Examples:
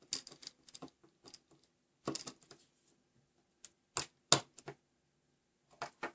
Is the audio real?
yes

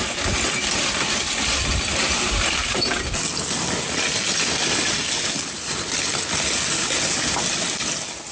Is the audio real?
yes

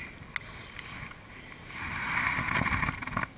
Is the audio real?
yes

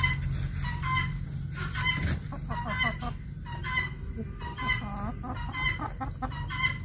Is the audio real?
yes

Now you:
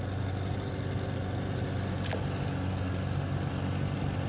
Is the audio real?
yes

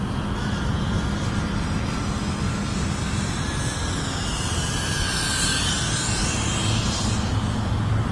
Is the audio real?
yes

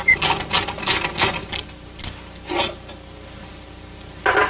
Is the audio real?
yes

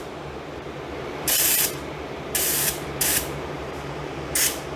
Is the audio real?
no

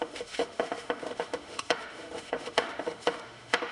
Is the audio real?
no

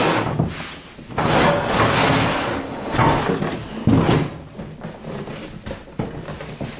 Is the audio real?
yes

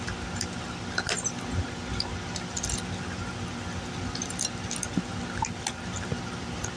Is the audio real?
yes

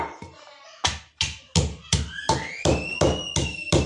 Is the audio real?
yes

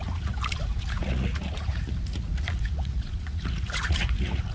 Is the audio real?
no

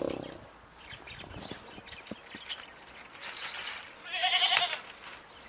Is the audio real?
yes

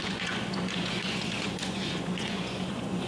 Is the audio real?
no